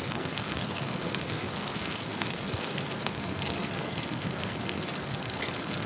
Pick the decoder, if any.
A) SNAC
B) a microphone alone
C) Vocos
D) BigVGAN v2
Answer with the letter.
A